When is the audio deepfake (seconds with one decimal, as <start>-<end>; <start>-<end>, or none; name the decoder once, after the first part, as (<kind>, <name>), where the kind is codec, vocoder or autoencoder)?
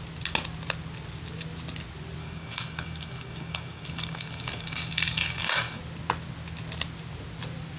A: 2.2-5.8 (codec, DAC)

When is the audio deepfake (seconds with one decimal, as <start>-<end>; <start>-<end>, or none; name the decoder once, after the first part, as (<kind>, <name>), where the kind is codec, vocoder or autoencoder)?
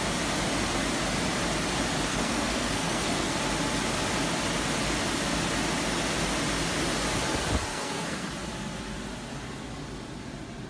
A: 2.1-3.4 (codec, SNAC); 7.7-8.3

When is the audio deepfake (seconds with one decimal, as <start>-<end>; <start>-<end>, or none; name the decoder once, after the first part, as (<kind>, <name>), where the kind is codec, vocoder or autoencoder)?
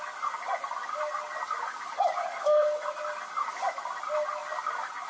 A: none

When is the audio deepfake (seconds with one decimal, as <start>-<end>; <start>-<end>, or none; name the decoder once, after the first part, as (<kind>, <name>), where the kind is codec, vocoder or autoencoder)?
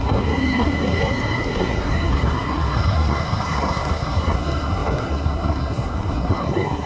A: 0.0-6.9 (codec, SNAC)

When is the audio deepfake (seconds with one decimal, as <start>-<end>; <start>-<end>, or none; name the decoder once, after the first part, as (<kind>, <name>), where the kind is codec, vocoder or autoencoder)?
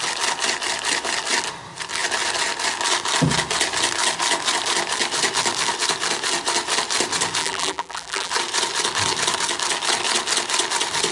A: 7.4-8.3 (vocoder, BigVGAN v2)